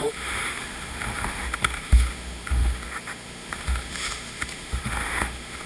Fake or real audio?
fake